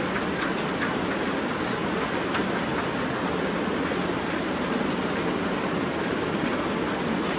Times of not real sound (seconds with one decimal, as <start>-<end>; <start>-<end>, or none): none